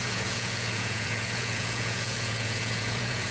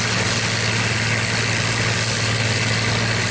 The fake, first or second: first